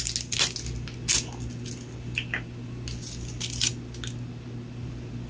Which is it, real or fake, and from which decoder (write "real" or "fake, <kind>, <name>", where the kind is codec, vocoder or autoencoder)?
real